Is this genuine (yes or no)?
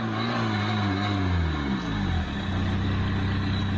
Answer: yes